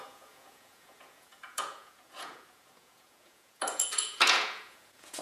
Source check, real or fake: fake